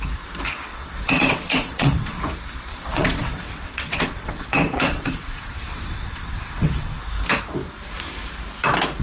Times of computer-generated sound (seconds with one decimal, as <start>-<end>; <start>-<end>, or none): 0.7-2.2; 2.7-7.0